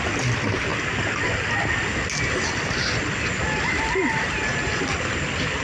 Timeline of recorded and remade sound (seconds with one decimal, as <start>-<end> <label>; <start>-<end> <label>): 0.0-5.6 recorded